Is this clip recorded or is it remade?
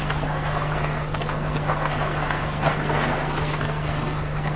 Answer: remade